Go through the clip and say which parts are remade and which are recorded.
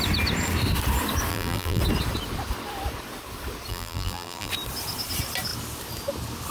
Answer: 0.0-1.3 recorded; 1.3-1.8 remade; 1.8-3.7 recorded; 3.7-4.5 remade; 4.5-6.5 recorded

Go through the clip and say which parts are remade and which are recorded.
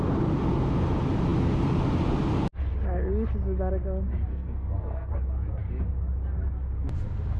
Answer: 0.0-4.3 recorded; 4.3-5.1 remade; 5.1-7.4 recorded